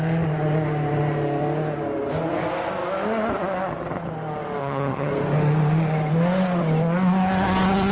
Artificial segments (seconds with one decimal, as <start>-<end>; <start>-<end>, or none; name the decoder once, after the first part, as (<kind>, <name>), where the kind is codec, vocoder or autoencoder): 4.6-5.1 (vocoder, HiFi-GAN)